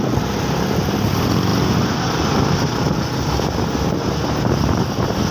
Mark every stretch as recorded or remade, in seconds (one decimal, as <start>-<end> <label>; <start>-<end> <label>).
0.0-5.3 recorded